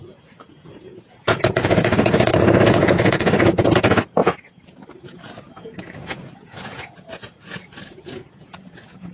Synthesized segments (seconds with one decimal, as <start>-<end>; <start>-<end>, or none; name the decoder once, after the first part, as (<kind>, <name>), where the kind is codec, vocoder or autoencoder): 0.0-9.1 (vocoder, Vocos)